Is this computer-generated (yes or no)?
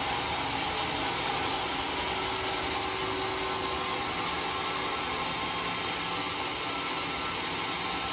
no